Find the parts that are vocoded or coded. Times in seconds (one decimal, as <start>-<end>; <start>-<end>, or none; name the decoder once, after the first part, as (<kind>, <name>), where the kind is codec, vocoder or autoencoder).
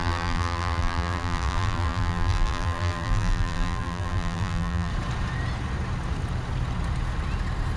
0.0-4.9 (vocoder, BigVGAN v2)